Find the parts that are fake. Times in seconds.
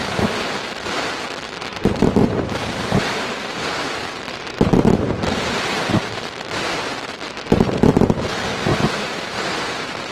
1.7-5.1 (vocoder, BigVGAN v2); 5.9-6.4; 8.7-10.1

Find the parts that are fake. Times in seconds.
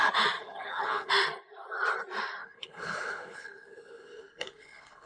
0.4-1.1 (codec, HILCodec); 2.4-5.1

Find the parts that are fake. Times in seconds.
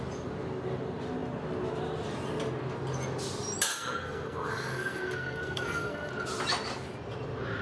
3.7-6.1 (codec, SNAC)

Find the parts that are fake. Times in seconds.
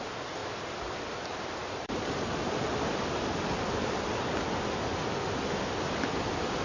0.4-2.3 (vocoder, BigVGAN v2)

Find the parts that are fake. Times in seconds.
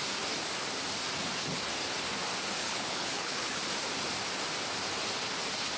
2.6-3.6 (codec, HILCodec)